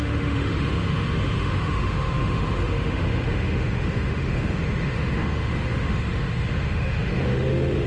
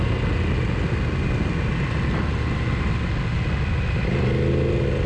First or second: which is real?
second